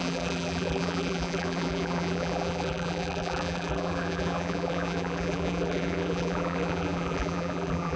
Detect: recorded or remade remade